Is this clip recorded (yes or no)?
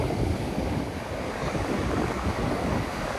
no